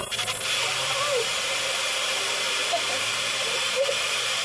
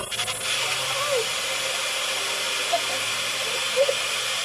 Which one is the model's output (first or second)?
first